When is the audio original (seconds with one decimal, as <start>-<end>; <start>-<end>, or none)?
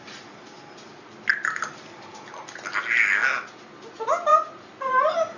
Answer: 0.0-5.4